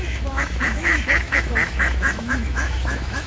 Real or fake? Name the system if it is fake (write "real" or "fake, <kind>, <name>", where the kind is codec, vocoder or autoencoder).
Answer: fake, autoencoder, DAC-VAE